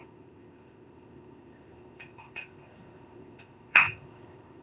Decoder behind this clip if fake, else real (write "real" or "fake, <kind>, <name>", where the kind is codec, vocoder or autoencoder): fake, codec, ZipCodec